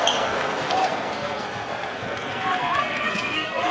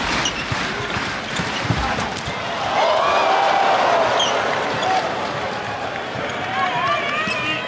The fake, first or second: first